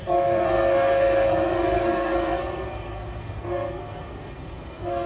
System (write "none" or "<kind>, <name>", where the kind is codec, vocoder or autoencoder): codec, SNAC